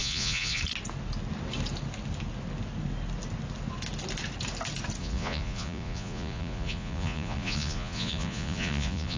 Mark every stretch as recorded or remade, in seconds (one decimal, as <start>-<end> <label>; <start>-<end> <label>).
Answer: 0.0-0.6 remade; 0.6-5.0 recorded; 5.0-9.2 remade